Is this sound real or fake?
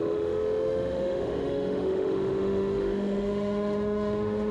fake